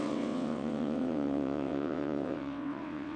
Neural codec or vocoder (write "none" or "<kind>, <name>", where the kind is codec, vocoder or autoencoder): vocoder, WaveNeXt